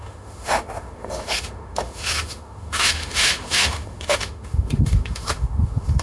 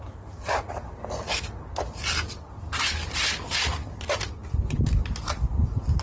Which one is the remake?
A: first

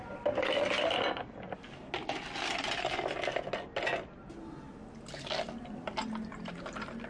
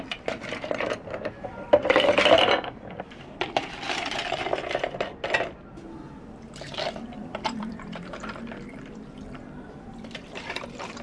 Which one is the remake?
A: second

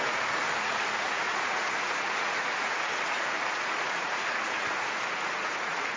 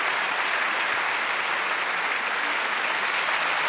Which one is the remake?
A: first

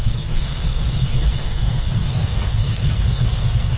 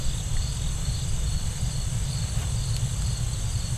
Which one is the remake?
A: first